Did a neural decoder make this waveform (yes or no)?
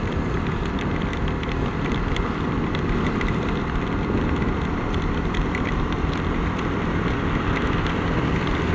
yes